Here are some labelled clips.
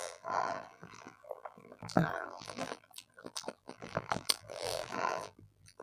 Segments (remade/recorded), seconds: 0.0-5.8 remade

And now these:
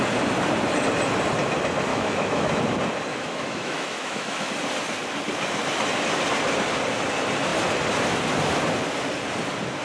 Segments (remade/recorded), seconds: 0.0-1.9 recorded; 1.9-2.6 remade; 2.6-3.1 recorded; 3.1-4.5 remade; 4.5-9.8 recorded

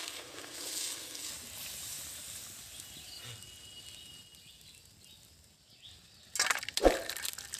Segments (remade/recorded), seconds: 0.0-1.3 remade; 1.3-7.6 recorded